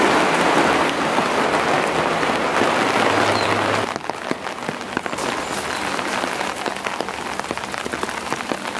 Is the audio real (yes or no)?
yes